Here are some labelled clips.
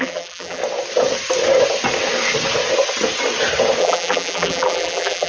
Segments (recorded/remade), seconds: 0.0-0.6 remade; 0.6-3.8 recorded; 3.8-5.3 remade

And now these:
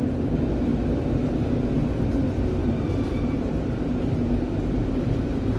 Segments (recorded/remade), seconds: 0.0-2.6 recorded; 2.6-5.1 remade; 5.1-5.6 recorded

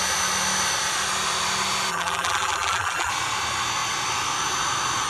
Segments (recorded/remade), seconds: 0.0-1.9 recorded; 1.9-3.1 remade; 3.1-5.1 recorded